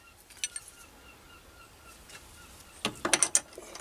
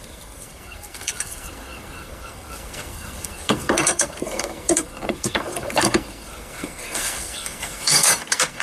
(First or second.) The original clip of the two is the first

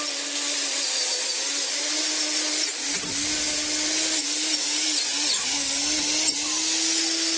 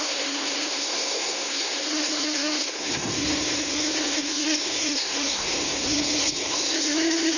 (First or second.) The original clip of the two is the first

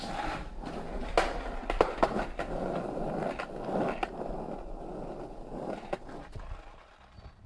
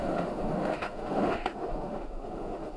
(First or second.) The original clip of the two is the first